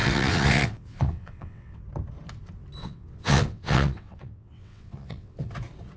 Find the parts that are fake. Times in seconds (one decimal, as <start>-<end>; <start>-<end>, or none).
0.0-1.8; 2.8-5.5